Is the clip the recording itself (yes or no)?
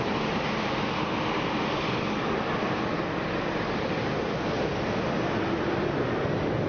yes